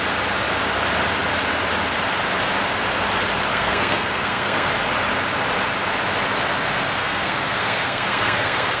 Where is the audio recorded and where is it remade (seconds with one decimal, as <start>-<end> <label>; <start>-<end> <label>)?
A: 0.0-3.5 recorded; 3.5-4.7 remade; 4.7-7.0 recorded; 7.0-8.8 remade

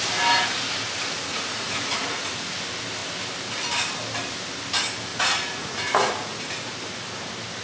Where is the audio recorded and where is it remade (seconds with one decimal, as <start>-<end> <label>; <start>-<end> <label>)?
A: 0.0-1.3 recorded; 1.3-2.5 remade; 2.5-5.1 recorded; 5.1-6.7 remade; 6.7-7.6 recorded

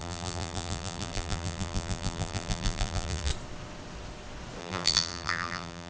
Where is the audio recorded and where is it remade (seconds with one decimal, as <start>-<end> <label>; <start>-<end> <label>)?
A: 0.0-3.3 remade; 3.3-4.6 recorded; 4.6-5.9 remade